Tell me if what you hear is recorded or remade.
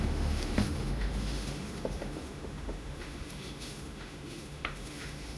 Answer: remade